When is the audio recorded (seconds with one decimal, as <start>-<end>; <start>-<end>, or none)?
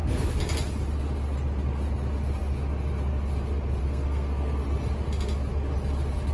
0.0-3.8; 4.6-6.3